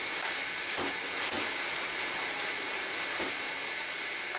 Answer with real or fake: real